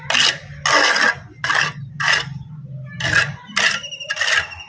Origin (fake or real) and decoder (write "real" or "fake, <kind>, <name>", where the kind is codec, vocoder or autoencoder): real